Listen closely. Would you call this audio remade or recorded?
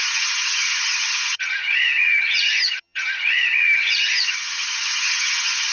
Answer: remade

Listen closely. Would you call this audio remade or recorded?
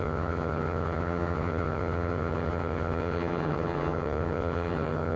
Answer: remade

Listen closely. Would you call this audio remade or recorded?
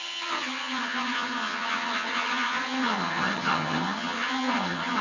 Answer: remade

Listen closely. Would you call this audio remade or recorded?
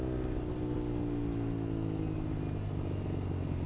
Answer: recorded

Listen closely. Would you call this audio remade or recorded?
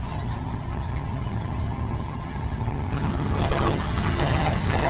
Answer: remade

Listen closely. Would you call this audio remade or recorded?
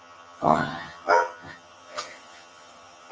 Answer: remade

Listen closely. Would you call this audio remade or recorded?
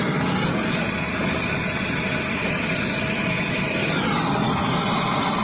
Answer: recorded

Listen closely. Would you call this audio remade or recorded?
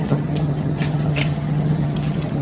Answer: remade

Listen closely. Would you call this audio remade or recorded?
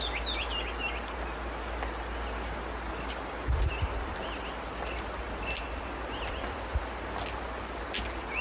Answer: recorded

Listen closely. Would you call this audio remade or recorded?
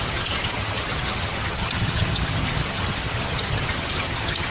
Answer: remade